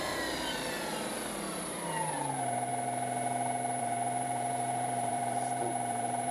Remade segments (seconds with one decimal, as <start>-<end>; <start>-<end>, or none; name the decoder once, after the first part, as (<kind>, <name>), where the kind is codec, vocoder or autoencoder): 0.0-2.7 (vocoder, BigVGAN v2); 3.8-6.3

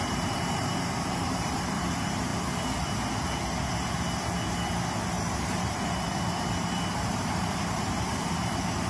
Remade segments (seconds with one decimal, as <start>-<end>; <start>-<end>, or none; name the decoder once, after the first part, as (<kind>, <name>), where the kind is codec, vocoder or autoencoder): 0.0-2.3 (vocoder, BigVGAN v2); 5.1-6.1; 6.9-8.9

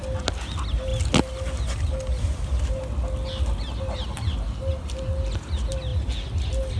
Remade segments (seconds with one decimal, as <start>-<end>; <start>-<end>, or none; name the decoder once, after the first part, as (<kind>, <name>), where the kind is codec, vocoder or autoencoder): none

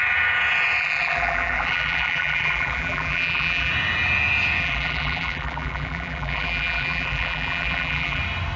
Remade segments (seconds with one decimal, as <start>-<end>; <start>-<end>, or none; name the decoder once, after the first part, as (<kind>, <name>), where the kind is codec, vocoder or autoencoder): 0.8-3.7 (vocoder, BigVGAN v2); 4.6-8.2

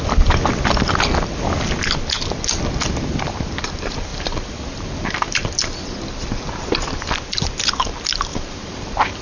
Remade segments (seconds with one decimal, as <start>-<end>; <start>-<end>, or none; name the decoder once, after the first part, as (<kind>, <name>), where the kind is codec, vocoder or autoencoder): 4.1-5.5 (vocoder, BigVGAN v2); 8.3-9.2

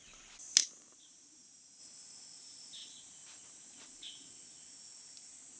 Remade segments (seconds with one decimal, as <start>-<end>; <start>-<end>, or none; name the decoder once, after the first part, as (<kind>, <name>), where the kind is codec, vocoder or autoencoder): 0.6-1.8 (vocoder, BigVGAN v2); 2.8-4.3

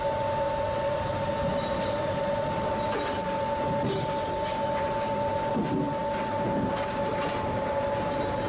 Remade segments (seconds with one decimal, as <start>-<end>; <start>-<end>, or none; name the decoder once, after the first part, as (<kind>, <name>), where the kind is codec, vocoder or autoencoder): none

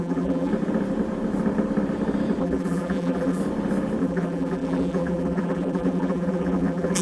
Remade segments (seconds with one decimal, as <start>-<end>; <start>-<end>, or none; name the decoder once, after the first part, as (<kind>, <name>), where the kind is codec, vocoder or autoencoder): 0.0-0.5 (vocoder, BigVGAN v2); 2.4-3.4; 4.0-7.0